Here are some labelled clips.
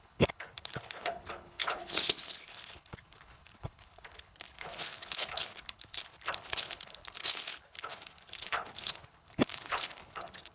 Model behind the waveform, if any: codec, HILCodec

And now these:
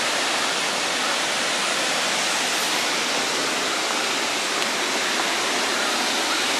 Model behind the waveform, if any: none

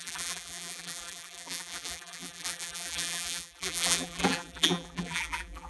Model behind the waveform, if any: vocoder, BigVGAN v2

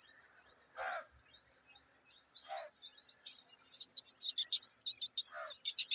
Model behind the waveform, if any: none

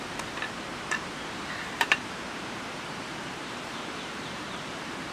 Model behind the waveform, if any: vocoder, BigVGAN v2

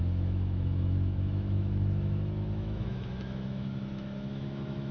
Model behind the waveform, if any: autoencoder, DAC-VAE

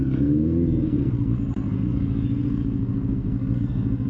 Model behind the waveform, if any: codec, SNAC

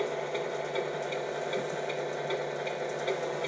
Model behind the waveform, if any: none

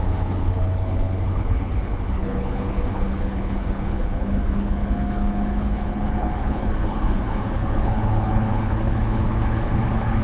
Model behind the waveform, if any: codec, HILCodec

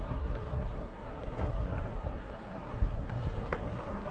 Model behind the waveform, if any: codec, SNAC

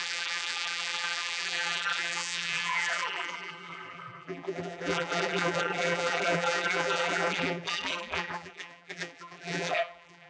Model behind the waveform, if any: vocoder, BigVGAN v2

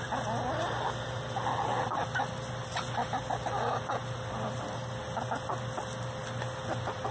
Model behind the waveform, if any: none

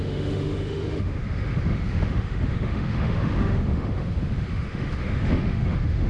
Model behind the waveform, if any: autoencoder, DAC-VAE